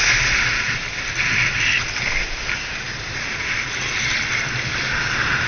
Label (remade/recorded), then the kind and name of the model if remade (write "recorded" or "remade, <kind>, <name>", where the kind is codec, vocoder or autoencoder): recorded